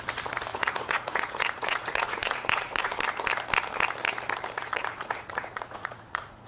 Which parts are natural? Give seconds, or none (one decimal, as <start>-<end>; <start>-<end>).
0.0-0.5; 3.0-4.6